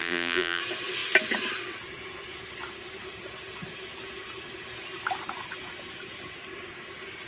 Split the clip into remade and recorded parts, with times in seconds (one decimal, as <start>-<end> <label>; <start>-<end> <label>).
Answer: 0.0-0.6 remade; 0.6-7.3 recorded